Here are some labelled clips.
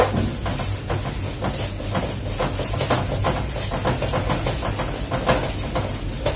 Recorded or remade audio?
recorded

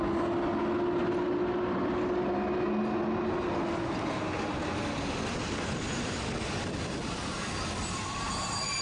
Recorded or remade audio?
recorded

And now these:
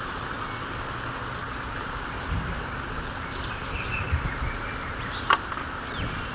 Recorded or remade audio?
recorded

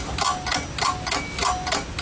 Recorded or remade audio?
recorded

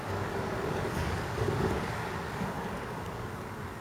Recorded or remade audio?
remade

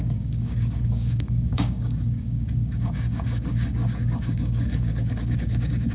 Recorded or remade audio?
remade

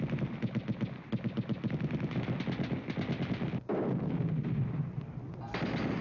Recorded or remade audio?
recorded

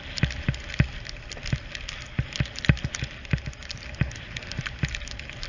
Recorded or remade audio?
recorded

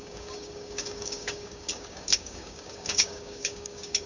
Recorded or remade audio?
remade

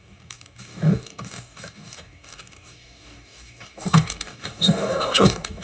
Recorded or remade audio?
remade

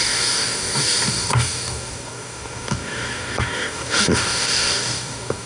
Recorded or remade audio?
remade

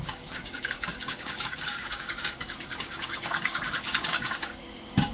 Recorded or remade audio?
remade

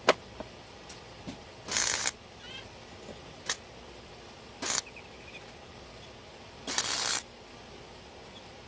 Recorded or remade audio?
recorded